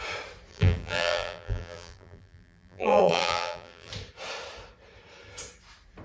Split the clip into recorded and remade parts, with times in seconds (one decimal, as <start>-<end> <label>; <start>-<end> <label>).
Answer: 0.0-0.5 recorded; 0.5-3.9 remade; 3.9-6.0 recorded